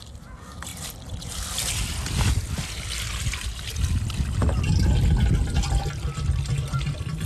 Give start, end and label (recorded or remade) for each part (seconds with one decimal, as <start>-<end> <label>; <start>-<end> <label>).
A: 0.0-7.3 recorded